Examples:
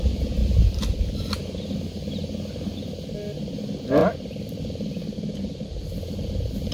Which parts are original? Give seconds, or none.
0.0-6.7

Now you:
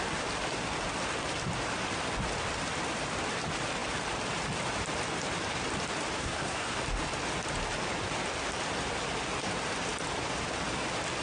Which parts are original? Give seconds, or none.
0.0-6.2; 6.8-11.2

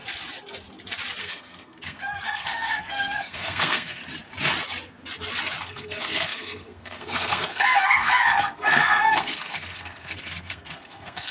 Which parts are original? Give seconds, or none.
0.0-1.2; 4.0-5.6

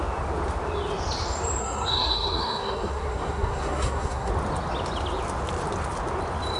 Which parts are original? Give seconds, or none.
0.0-1.6; 4.3-6.6